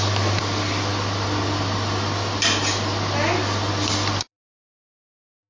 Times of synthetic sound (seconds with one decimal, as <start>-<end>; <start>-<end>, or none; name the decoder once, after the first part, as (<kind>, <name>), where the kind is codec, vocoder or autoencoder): none